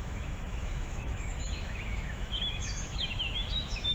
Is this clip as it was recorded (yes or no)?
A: no